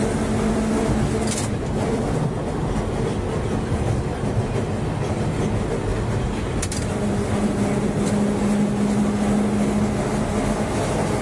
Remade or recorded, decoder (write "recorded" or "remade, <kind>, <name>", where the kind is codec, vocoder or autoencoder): recorded